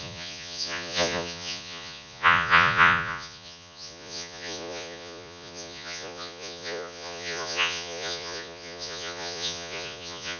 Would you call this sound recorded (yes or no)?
no